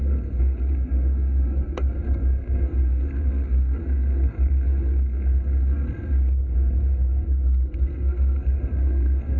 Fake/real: fake